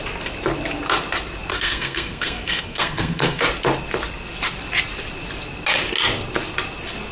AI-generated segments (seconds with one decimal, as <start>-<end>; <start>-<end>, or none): 1.5-3.4